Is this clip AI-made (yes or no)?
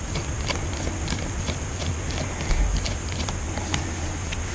no